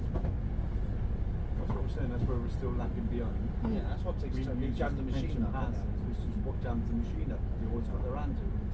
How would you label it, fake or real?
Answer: real